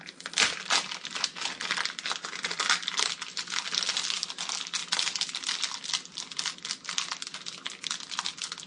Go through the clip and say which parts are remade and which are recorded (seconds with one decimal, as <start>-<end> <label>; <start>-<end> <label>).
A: 0.0-8.7 recorded